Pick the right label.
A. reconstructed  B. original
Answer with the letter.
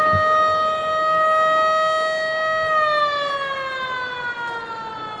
B